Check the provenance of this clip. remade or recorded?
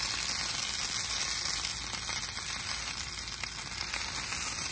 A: recorded